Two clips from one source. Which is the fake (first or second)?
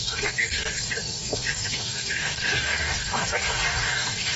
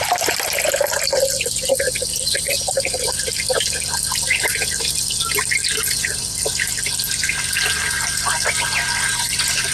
first